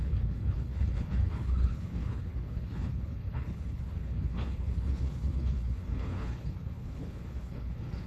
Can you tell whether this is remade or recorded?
remade